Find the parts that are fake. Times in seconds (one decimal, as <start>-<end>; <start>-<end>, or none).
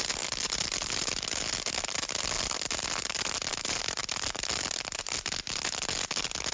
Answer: 3.5-4.0